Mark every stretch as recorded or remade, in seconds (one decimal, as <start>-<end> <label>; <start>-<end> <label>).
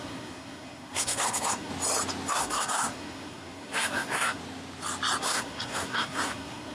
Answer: 0.0-1.7 remade; 1.7-2.3 recorded; 2.3-4.4 remade; 4.4-5.2 recorded; 5.2-6.7 remade